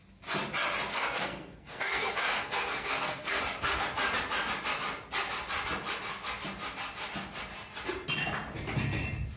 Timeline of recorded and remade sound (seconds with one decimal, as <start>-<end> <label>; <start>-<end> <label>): 0.0-0.9 recorded; 0.9-3.4 remade; 3.4-9.4 recorded